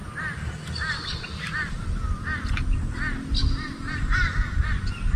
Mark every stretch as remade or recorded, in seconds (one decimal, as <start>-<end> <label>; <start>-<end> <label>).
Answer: 0.0-5.2 recorded